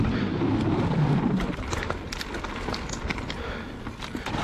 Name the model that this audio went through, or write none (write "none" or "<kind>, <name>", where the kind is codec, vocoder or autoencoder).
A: none